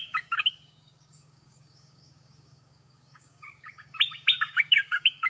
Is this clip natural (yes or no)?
no